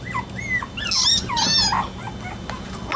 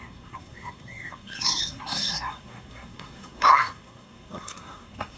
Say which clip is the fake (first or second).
second